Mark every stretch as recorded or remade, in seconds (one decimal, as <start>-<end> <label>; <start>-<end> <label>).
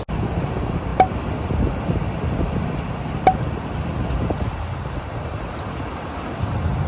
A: 0.0-6.9 recorded